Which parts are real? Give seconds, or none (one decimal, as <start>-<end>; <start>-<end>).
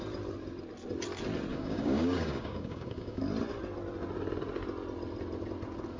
0.0-1.5; 3.2-6.0